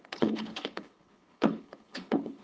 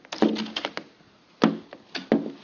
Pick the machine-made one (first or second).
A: first